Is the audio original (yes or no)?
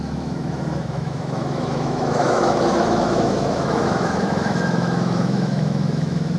no